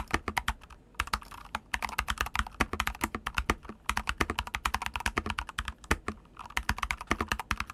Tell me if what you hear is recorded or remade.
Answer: recorded